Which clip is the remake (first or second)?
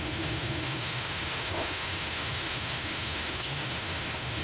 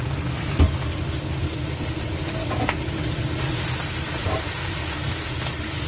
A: first